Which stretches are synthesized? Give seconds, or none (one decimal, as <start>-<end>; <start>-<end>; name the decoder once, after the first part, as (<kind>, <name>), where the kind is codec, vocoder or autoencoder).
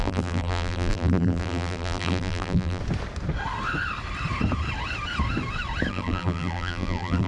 0.0-2.8 (vocoder, BigVGAN v2); 5.9-7.3